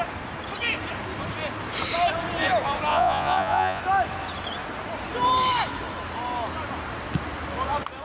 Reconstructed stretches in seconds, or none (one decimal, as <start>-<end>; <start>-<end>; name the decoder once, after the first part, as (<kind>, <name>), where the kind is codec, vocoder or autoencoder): 2.9-3.8 (vocoder, Vocos)